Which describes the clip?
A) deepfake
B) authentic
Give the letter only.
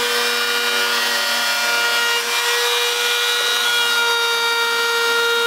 B